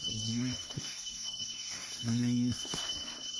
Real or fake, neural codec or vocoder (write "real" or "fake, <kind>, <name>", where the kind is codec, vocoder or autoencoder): fake, codec, SNAC